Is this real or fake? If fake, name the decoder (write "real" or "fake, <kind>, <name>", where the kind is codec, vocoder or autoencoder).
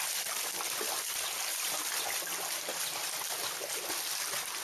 real